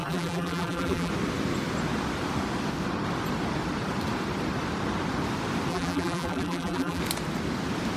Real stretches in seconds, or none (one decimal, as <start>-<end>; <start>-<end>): 1.1-5.7; 7.0-8.0